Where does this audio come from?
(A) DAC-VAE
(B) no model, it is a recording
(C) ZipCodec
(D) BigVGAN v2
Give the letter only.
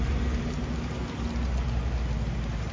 B